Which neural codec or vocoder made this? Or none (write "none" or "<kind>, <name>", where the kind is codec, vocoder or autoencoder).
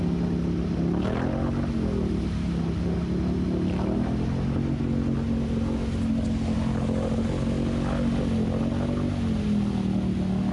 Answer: none